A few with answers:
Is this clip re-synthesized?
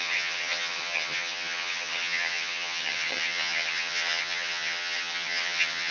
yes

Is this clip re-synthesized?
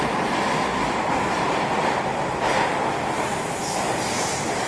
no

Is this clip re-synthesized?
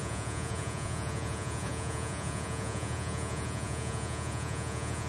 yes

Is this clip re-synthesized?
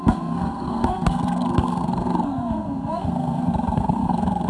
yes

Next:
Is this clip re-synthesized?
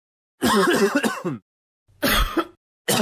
no